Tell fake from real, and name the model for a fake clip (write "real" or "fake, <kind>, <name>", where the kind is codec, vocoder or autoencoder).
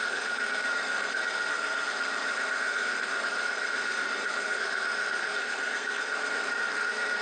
fake, codec, SNAC